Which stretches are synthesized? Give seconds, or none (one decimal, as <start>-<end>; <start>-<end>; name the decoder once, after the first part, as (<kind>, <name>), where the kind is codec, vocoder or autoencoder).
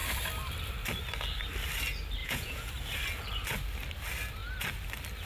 2.2-2.7 (vocoder, Vocos)